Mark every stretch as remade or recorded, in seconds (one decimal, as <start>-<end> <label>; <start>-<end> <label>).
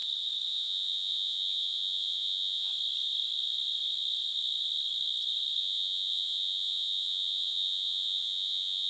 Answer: 0.0-0.5 recorded; 0.5-2.7 remade; 2.7-5.6 recorded; 5.6-8.9 remade